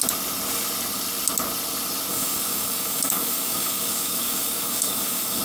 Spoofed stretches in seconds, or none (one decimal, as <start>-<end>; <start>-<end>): 2.1-5.4